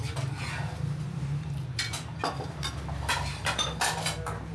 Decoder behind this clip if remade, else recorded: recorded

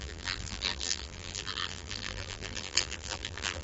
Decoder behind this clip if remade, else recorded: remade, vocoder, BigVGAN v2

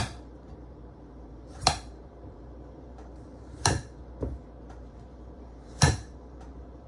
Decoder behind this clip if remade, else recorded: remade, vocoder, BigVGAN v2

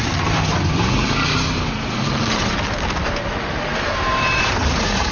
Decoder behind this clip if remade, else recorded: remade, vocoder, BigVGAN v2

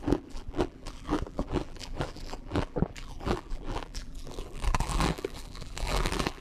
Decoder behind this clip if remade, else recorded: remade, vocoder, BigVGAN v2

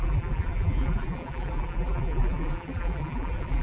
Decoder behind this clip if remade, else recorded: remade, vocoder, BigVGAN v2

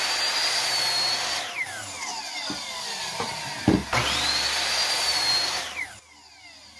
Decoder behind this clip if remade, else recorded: recorded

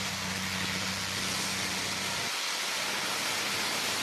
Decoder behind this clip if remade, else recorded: recorded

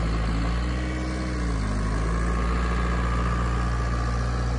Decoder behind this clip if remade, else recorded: recorded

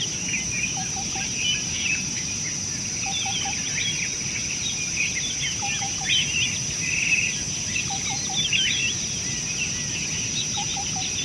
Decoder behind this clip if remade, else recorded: recorded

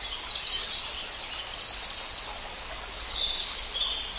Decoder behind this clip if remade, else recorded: recorded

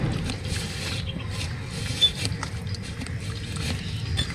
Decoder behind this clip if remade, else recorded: recorded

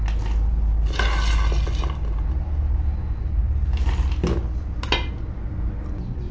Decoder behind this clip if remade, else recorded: recorded